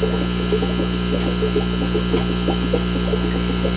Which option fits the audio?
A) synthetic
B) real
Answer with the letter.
B